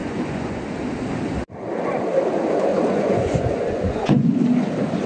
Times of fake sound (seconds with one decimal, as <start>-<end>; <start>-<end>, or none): 0.0-0.6; 2.7-4.3